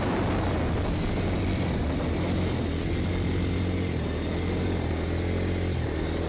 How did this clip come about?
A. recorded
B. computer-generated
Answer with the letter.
A